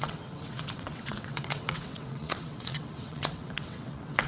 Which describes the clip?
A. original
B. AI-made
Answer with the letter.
B